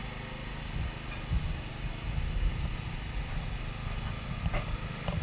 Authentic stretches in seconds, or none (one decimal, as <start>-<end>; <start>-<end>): 0.0-5.2